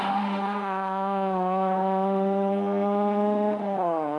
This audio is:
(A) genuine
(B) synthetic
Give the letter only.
B